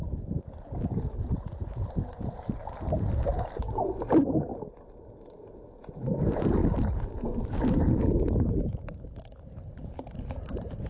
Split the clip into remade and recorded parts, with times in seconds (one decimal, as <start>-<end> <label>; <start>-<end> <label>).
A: 0.0-1.1 recorded; 1.1-4.0 remade; 4.0-6.6 recorded; 6.6-9.6 remade; 9.6-10.9 recorded